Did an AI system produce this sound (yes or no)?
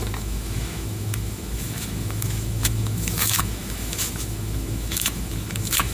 yes